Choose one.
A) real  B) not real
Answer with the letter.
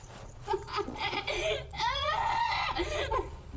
B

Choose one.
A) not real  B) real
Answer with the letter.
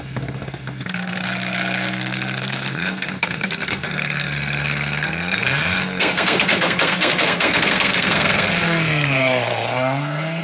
A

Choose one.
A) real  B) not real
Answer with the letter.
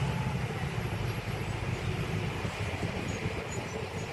B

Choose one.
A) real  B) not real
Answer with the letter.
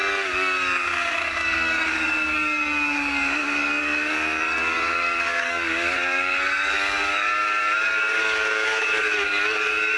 B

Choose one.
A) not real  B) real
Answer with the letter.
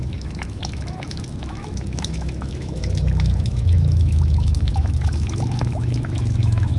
A